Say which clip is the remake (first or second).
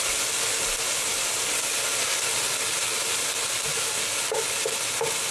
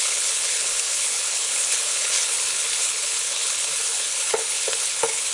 second